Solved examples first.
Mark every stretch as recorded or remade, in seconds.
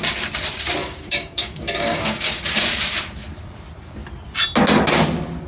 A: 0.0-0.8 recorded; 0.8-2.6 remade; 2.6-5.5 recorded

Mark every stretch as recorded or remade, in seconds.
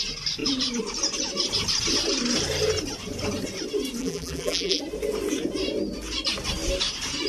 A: 0.0-4.0 recorded; 4.0-4.8 remade; 4.8-7.3 recorded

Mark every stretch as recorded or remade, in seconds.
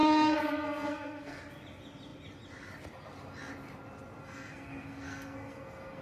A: 0.0-1.4 remade; 1.4-4.2 recorded; 4.2-6.0 remade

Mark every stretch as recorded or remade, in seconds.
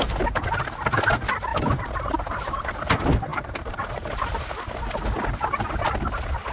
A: 0.0-1.5 recorded; 1.5-2.7 remade; 2.7-3.3 recorded; 3.3-4.2 remade; 4.2-6.5 recorded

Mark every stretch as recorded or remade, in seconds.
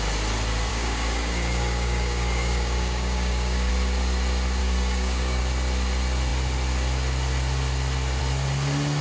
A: 0.0-0.7 recorded; 0.7-3.7 remade; 3.7-4.6 recorded; 4.6-5.4 remade; 5.4-9.0 recorded